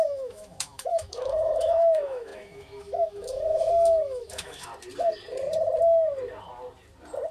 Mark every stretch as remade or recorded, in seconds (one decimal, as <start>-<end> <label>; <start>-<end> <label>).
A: 0.0-4.7 remade; 4.7-7.3 recorded

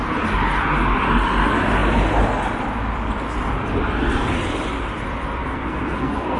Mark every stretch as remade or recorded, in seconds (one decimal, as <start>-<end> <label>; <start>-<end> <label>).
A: 0.0-5.4 recorded; 5.4-6.4 remade

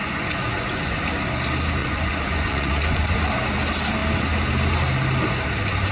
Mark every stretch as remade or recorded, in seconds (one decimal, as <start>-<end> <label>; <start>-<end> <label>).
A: 0.0-1.0 remade; 1.0-1.8 recorded; 1.8-3.3 remade; 3.3-5.9 recorded

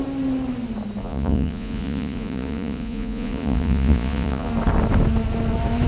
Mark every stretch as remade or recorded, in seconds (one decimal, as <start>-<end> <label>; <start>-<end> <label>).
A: 0.0-1.0 recorded; 1.0-4.5 remade; 4.5-5.9 recorded

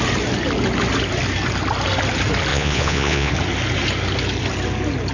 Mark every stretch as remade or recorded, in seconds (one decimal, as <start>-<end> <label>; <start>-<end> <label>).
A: 0.0-2.5 recorded; 2.5-3.3 remade; 3.3-5.1 recorded

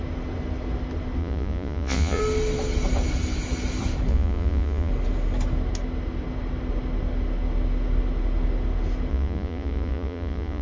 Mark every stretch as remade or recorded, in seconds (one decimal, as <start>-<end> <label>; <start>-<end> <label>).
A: 0.0-1.2 recorded; 1.2-2.2 remade; 2.2-4.1 recorded; 4.1-4.9 remade; 4.9-9.1 recorded; 9.1-10.6 remade

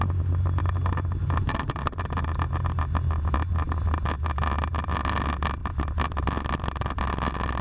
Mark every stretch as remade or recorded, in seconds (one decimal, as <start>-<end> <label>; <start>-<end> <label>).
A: 0.0-7.6 recorded

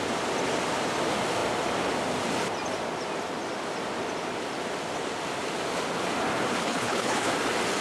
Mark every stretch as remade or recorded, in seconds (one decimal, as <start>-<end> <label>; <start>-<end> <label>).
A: 0.0-6.6 recorded; 6.6-7.3 remade; 7.3-7.8 recorded